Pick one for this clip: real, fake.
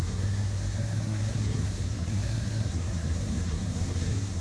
fake